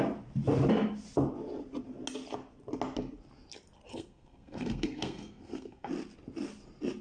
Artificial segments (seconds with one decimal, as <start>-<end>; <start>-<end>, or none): 3.9-5.9